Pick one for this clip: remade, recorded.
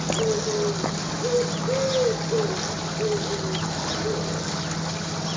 recorded